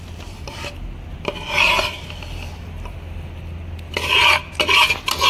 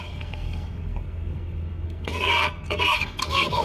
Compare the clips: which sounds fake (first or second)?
second